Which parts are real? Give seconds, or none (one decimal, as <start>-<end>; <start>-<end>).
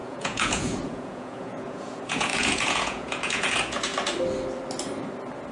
3.9-5.5